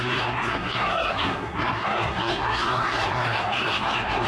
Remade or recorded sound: remade